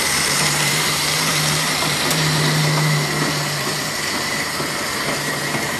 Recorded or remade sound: remade